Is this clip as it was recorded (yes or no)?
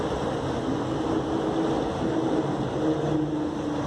yes